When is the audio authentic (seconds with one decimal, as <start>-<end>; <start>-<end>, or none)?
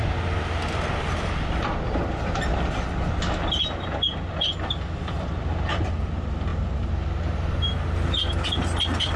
0.0-4.9; 6.5-9.2